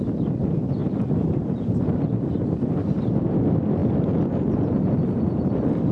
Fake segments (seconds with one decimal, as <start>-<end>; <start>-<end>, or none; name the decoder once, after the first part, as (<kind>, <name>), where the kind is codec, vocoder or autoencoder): 0.8-2.3 (vocoder, BigVGAN v2)